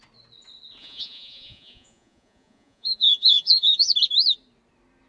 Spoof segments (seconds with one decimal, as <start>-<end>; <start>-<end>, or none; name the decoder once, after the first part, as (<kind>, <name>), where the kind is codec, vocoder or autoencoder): 0.8-3.9 (vocoder, Vocos)